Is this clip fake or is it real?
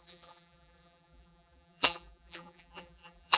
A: fake